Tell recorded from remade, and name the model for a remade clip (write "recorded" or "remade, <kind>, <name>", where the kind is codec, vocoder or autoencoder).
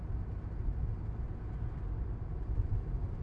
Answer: recorded